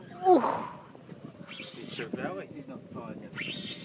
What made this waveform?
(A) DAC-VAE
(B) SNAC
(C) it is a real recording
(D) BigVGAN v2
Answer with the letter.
C